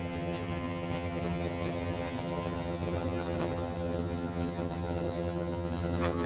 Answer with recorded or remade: remade